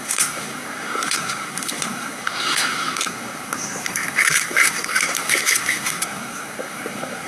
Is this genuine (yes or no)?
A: no